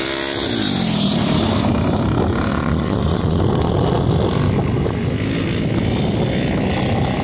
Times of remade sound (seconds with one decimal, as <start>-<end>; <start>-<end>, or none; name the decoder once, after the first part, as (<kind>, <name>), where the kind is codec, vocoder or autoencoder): 2.5-3.4 (vocoder, Vocos)